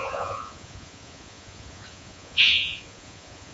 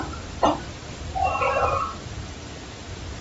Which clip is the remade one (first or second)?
first